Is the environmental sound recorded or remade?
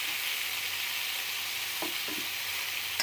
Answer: recorded